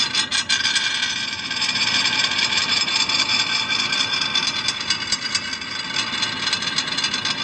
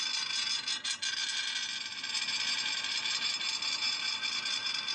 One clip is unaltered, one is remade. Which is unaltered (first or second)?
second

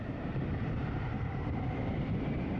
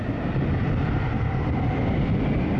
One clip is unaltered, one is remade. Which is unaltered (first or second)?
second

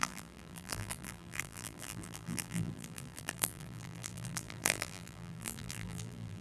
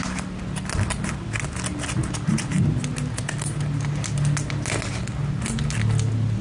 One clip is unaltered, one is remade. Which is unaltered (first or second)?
second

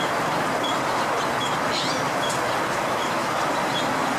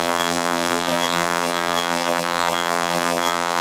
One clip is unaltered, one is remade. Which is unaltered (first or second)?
first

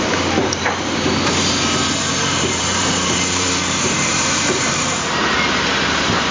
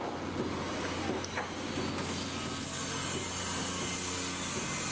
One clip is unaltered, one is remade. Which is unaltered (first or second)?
second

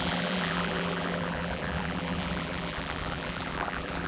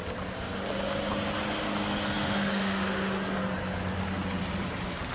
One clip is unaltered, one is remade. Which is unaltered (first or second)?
second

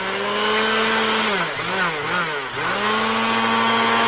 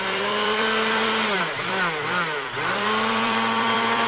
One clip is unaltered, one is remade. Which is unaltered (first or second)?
first